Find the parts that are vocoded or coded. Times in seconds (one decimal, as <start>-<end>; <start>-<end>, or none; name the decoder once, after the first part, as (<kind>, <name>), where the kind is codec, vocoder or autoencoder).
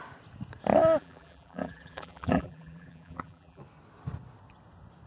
1.0-3.6 (vocoder, BigVGAN v2)